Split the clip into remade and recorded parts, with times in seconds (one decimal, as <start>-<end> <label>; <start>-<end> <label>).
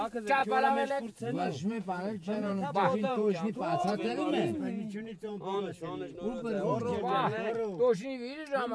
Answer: 0.0-0.4 recorded; 0.4-5.6 remade; 5.6-6.9 recorded; 6.9-7.5 remade; 7.5-8.7 recorded